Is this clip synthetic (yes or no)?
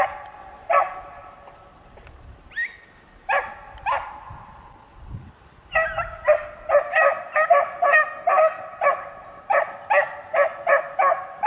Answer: no